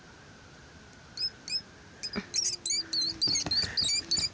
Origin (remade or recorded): recorded